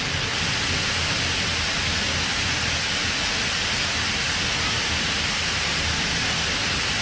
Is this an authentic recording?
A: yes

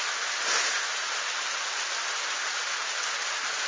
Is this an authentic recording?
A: yes